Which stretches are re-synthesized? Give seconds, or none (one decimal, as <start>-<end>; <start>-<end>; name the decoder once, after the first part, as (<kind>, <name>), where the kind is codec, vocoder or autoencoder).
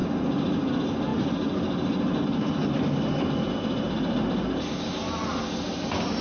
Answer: none